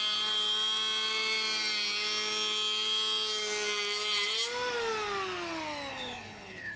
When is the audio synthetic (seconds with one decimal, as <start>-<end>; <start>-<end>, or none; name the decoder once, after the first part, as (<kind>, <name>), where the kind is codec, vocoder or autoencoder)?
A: 5.9-6.8 (codec, HILCodec)